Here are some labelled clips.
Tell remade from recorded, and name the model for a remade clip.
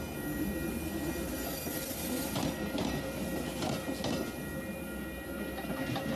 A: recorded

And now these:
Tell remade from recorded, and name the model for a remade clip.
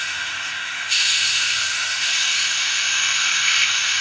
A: remade, autoencoder, DAC-VAE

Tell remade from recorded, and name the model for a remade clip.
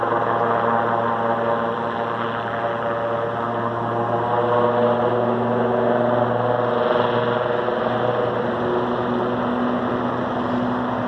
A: recorded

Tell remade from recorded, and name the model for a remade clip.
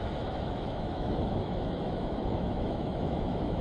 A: remade, autoencoder, DAC-VAE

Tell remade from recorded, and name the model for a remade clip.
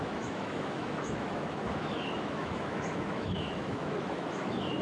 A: remade, autoencoder, DAC-VAE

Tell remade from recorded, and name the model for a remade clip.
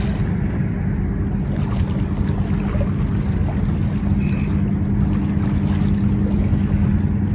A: recorded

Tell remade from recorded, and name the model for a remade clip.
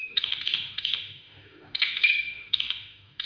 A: remade, autoencoder, DAC-VAE